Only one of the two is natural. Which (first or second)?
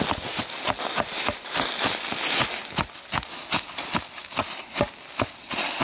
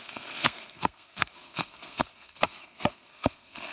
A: first